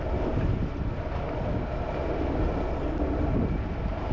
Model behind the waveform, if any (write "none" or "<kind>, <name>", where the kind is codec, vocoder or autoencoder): none